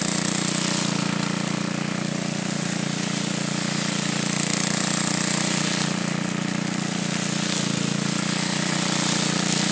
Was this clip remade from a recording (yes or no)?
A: no